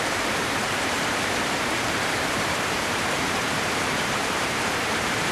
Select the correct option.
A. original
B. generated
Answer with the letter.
B